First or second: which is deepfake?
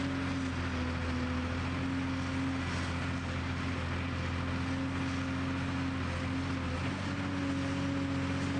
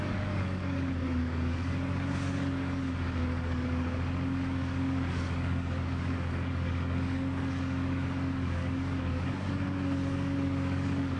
second